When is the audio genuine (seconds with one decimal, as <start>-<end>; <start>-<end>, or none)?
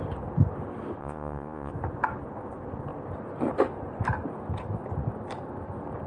0.0-1.0; 1.7-6.1